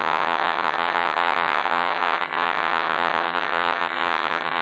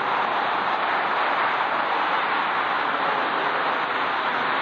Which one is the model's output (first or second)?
first